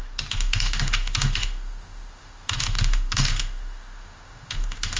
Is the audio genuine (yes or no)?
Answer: no